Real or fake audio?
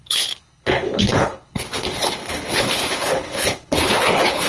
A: fake